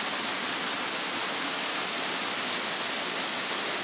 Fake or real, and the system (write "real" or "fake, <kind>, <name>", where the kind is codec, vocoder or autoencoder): real